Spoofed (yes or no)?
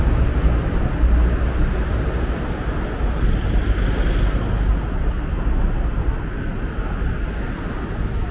no